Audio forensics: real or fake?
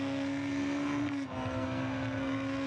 fake